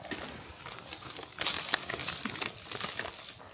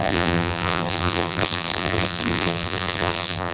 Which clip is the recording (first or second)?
first